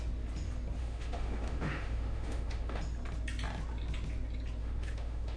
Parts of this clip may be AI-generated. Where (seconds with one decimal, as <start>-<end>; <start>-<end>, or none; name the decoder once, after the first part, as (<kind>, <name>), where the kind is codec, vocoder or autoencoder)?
0.8-2.8 (autoencoder, DAC-VAE); 4.6-5.4